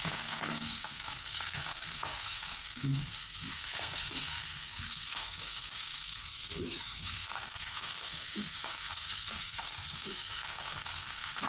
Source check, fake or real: fake